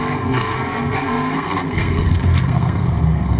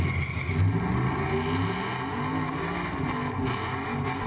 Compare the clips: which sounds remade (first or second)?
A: first